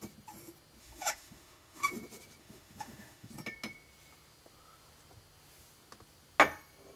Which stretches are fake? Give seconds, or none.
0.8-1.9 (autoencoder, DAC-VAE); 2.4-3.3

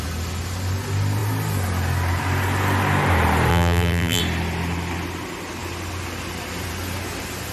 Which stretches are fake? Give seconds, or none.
3.5-4.2 (vocoder, BigVGAN v2)